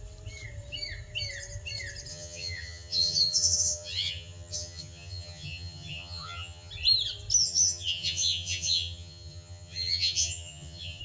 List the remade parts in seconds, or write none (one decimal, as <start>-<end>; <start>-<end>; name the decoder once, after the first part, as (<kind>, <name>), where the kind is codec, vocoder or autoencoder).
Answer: 2.1-6.7 (vocoder, HiFi-GAN); 7.4-11.0